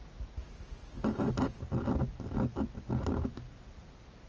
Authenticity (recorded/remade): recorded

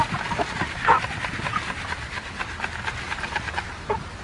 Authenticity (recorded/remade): recorded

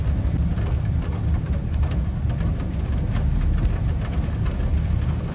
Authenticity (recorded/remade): recorded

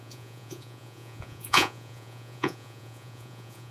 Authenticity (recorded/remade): remade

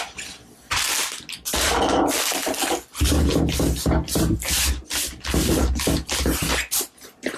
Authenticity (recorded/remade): recorded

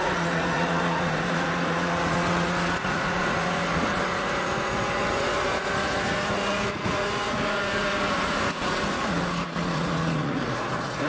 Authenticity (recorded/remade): remade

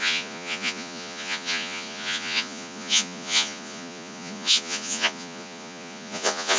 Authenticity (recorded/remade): remade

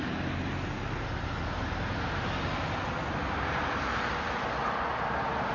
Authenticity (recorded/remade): recorded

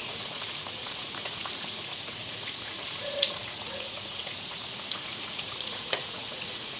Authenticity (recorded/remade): remade